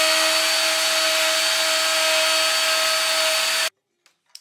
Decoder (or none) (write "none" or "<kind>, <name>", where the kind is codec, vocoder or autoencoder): none